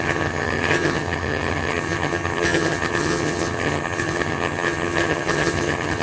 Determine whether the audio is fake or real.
fake